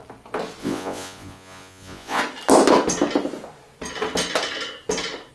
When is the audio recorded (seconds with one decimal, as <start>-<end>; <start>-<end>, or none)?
0.0-0.6; 2.2-5.3